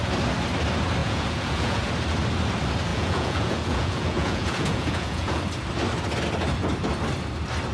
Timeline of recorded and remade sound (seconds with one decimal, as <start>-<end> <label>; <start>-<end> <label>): 0.0-1.0 recorded; 1.0-1.8 remade; 1.8-2.9 recorded; 2.9-5.4 remade; 5.4-7.7 recorded